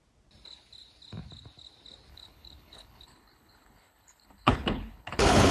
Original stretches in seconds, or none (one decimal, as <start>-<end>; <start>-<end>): 0.0-2.1

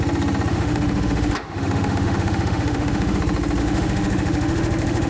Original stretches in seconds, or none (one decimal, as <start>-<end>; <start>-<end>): 0.0-0.5; 3.2-3.6

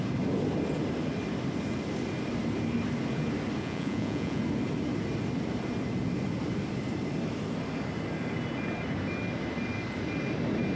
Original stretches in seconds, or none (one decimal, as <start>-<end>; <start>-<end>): 0.0-3.6; 4.4-10.8

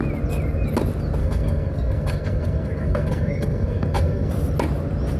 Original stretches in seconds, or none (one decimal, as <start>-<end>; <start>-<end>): 0.0-1.2; 4.3-5.2

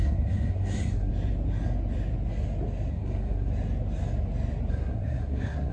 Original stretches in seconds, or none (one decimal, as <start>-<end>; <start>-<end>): 1.1-2.9; 3.5-4.7

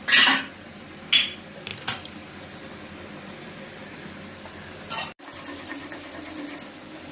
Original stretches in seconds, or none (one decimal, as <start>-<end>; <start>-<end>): 0.0-1.7; 2.3-5.3; 6.1-7.1